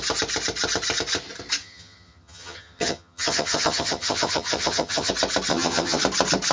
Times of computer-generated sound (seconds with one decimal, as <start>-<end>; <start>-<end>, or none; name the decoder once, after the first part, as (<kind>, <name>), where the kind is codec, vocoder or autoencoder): 1.6-5.1 (vocoder, HiFi-GAN); 5.5-6.0